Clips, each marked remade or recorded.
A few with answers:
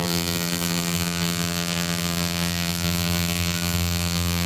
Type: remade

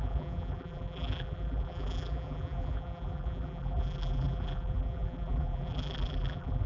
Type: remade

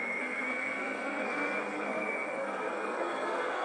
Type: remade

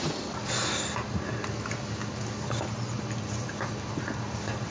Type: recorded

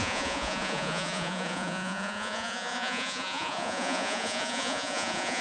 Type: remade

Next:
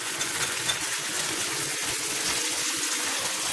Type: remade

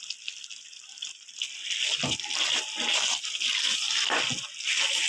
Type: recorded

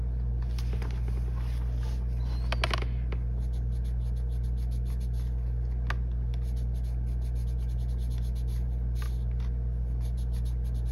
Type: recorded